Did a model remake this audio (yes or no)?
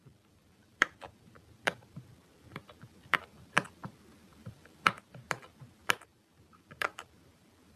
yes